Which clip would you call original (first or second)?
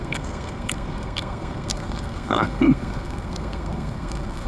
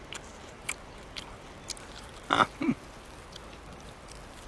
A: second